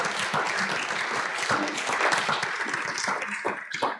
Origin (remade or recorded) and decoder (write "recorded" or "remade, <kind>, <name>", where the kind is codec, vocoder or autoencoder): recorded